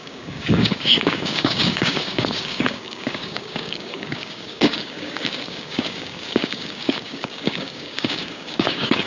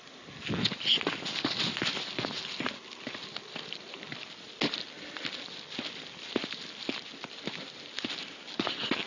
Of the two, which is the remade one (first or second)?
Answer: first